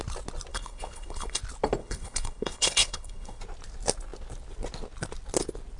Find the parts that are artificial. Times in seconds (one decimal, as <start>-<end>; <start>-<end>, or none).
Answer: 0.5-1.4; 1.8-3.4